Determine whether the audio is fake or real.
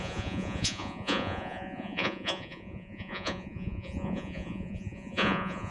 fake